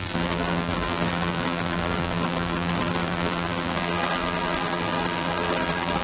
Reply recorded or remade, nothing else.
remade